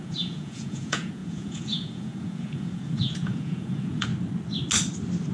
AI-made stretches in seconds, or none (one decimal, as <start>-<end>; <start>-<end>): 0.0-4.1